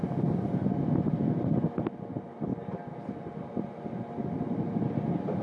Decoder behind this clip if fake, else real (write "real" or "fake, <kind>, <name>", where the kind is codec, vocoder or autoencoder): real